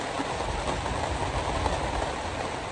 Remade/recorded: recorded